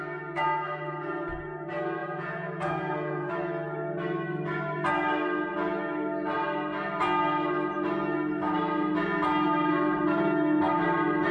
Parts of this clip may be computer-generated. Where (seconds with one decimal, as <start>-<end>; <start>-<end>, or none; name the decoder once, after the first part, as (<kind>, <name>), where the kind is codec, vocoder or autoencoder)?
2.0-3.3 (vocoder, Vocos)